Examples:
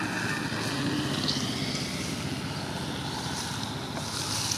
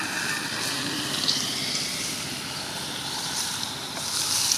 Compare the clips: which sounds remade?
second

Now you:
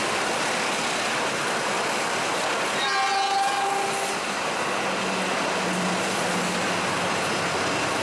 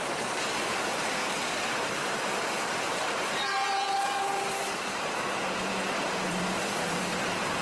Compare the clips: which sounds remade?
second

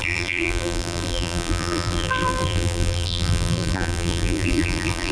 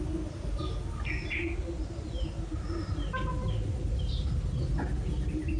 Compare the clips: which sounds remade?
first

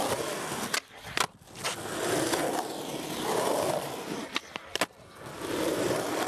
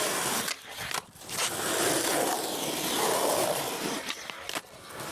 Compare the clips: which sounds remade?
second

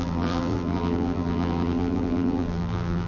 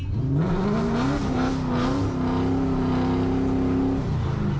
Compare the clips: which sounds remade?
first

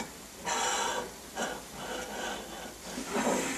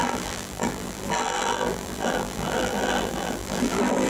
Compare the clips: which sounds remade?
second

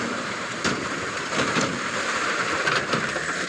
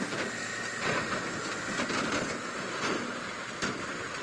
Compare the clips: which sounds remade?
first